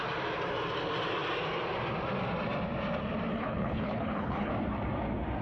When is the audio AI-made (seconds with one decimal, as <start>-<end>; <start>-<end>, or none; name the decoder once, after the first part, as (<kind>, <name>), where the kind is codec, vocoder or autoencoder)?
3.3-4.5 (codec, HILCodec)